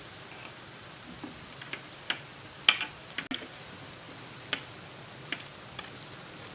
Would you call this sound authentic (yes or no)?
yes